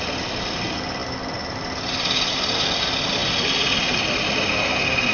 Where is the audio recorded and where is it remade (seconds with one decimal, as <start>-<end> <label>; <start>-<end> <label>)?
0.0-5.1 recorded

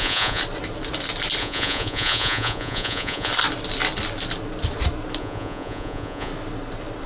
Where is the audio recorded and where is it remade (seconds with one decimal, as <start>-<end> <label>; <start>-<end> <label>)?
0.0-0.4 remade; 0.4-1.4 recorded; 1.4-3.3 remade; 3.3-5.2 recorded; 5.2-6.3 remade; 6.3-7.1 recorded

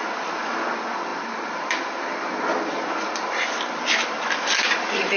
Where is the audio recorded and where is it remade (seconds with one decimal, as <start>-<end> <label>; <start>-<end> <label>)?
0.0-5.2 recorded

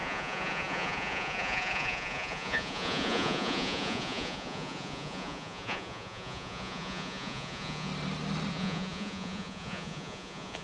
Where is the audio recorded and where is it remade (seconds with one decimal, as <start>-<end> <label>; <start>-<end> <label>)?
0.0-7.9 remade; 7.9-8.5 recorded; 8.5-10.6 remade

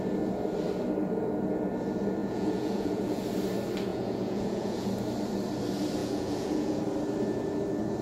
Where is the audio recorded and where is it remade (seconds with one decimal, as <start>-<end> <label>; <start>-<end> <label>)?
0.0-2.2 recorded; 2.2-3.2 remade; 3.2-3.9 recorded; 3.9-4.9 remade; 4.9-6.0 recorded; 6.0-6.8 remade; 6.8-8.0 recorded

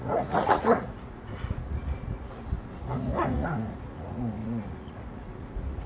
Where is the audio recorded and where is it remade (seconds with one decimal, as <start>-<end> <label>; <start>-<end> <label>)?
0.0-5.9 remade

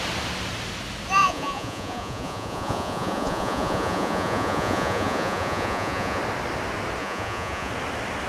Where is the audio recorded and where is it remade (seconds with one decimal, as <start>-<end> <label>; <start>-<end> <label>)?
0.0-1.2 recorded; 1.2-6.2 remade; 6.2-7.0 recorded; 7.0-7.7 remade; 7.7-8.3 recorded

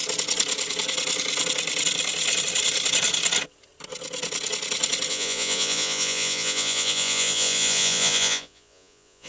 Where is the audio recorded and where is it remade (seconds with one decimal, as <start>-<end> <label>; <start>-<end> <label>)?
0.0-5.1 recorded; 5.1-9.3 remade